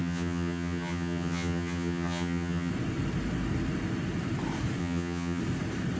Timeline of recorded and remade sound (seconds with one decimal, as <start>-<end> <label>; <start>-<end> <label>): 0.0-2.7 remade; 2.7-4.8 recorded; 4.8-5.4 remade; 5.4-6.0 recorded